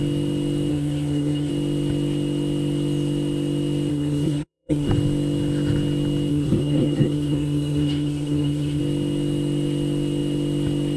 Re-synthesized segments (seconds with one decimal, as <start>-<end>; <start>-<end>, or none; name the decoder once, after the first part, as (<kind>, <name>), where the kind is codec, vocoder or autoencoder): 0.7-1.5 (codec, SNAC); 3.9-4.9; 6.3-8.8